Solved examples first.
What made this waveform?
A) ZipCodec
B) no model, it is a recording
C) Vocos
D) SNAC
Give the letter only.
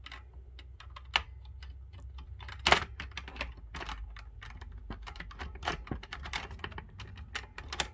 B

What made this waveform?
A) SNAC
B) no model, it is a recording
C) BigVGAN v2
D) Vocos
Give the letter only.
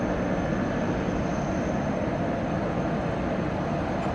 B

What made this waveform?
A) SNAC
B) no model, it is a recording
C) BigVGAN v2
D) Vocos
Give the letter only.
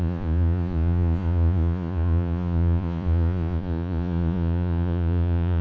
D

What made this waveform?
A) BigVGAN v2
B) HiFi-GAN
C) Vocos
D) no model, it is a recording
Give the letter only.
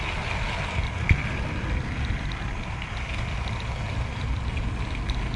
D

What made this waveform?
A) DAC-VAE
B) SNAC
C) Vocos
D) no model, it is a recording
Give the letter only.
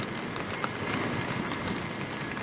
D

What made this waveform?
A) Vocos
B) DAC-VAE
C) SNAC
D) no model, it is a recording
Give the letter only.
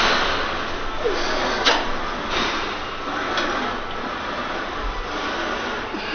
D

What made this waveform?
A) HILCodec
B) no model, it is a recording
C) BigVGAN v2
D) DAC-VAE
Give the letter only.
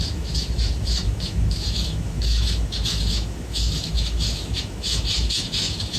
D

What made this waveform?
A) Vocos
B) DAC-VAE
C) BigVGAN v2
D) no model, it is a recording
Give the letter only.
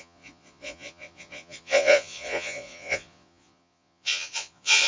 A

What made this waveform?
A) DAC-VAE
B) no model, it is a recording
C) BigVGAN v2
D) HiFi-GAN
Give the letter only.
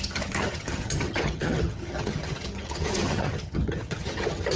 D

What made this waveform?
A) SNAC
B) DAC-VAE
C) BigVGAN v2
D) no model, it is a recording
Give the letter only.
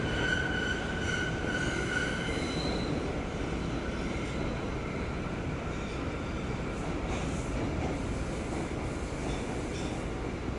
D